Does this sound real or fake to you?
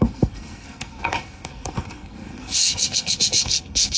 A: fake